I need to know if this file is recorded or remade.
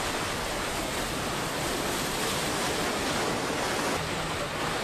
recorded